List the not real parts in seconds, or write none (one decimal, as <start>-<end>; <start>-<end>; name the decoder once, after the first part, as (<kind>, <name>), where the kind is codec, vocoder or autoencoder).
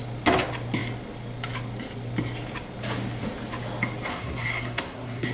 4.1-5.3 (codec, SNAC)